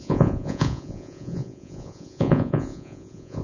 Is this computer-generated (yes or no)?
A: yes